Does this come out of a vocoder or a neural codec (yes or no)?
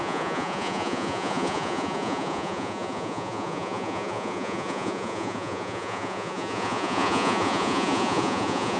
yes